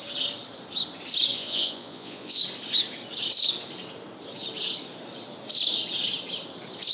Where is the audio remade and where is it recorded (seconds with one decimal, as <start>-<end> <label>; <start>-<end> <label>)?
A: 0.0-1.3 recorded; 1.3-2.4 remade; 2.4-6.9 recorded